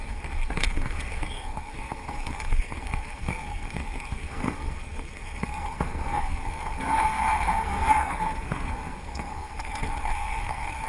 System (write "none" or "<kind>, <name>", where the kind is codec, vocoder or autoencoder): codec, SNAC